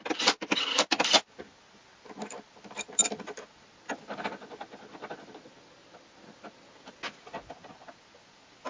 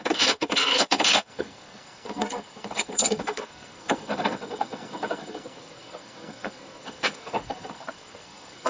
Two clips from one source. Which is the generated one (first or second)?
second